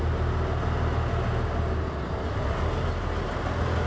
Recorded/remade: recorded